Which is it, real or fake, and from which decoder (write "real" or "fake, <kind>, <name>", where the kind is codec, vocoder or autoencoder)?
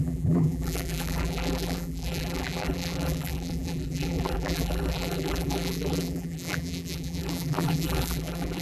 fake, vocoder, BigVGAN v2